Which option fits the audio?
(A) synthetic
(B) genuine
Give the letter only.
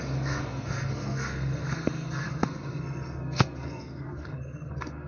A